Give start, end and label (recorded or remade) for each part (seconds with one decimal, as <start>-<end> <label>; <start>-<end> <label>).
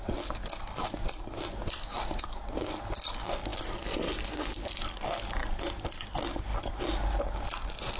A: 0.0-8.0 recorded